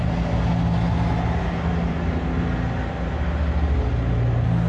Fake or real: real